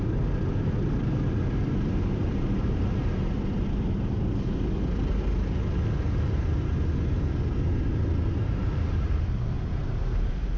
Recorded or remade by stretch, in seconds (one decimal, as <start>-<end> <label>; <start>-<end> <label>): 0.0-8.3 recorded; 8.3-10.6 remade